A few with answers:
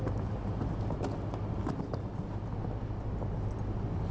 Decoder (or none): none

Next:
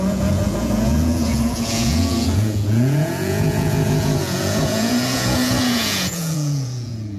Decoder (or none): vocoder, Vocos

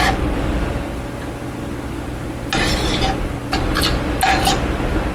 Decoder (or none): none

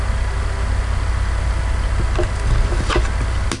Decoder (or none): none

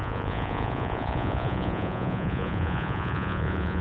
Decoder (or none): vocoder, Vocos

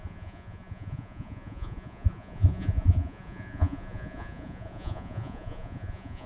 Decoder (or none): vocoder, Vocos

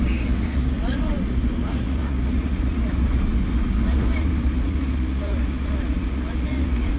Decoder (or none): vocoder, Vocos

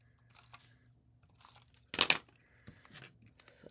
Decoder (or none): none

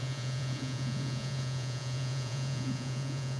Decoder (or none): vocoder, Vocos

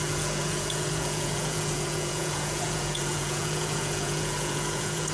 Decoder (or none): vocoder, Vocos